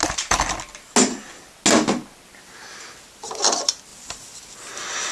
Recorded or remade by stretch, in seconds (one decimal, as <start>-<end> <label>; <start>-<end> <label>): 0.0-5.1 recorded